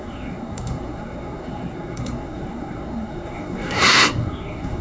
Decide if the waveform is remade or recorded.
remade